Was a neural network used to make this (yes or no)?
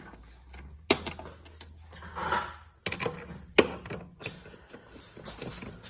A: no